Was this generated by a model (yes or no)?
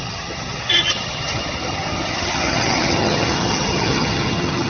yes